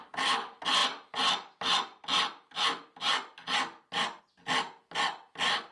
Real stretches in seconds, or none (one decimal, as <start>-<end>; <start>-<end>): 0.0-5.7